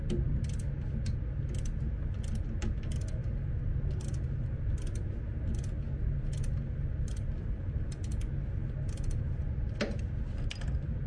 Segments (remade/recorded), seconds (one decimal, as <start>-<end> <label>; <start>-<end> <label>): 0.0-11.1 recorded